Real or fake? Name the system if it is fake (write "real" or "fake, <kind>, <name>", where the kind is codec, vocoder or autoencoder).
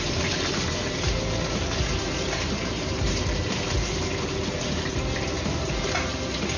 fake, vocoder, BigVGAN v2